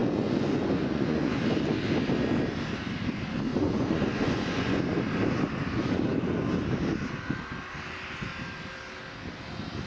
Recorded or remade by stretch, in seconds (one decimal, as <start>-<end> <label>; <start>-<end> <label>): 0.0-1.4 remade; 1.4-3.5 recorded; 3.5-4.8 remade; 4.8-9.9 recorded